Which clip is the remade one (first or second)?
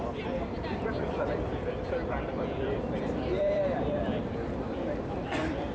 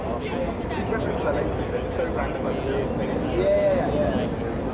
first